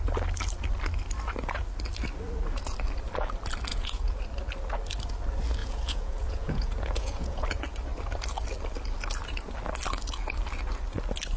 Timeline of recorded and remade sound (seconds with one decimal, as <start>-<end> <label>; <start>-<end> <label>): 0.0-3.7 recorded; 3.7-4.2 remade; 4.2-5.6 recorded; 5.6-7.4 remade; 7.4-11.4 recorded